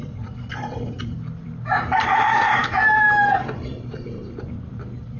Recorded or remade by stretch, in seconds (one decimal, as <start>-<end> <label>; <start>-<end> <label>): 0.0-5.2 remade